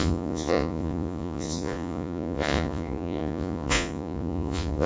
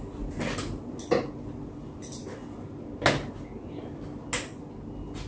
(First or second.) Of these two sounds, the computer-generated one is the first